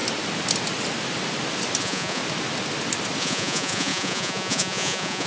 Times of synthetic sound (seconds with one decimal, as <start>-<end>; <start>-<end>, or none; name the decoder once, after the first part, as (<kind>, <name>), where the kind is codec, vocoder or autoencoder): 1.8-2.2 (vocoder, Vocos); 3.2-5.3